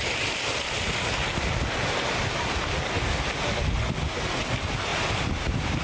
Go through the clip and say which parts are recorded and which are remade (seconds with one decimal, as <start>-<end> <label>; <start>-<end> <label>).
0.0-5.8 recorded

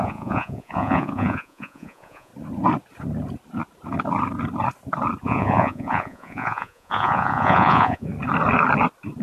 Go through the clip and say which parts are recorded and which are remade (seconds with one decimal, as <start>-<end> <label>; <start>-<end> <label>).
0.0-2.3 remade; 2.3-5.2 recorded; 5.2-8.1 remade; 8.1-9.2 recorded

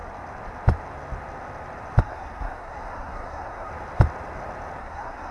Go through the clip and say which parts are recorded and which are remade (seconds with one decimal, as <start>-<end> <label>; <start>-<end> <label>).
0.0-2.0 recorded; 2.0-3.7 remade; 3.7-4.8 recorded; 4.8-5.3 remade

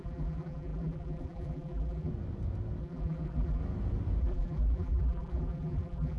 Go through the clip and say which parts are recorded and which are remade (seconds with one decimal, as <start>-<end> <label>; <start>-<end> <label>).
0.0-2.1 remade; 2.1-2.8 recorded; 2.8-3.6 remade; 3.6-4.2 recorded; 4.2-6.2 remade

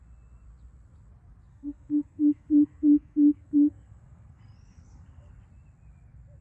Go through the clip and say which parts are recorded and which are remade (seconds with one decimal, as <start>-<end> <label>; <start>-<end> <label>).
0.0-1.5 recorded; 1.5-5.3 remade; 5.3-6.4 recorded

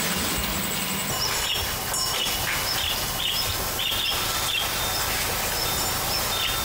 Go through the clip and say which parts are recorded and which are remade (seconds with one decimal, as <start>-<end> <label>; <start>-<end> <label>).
0.0-6.6 recorded